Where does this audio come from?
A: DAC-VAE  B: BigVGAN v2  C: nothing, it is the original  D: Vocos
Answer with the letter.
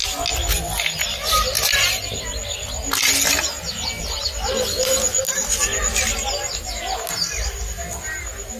C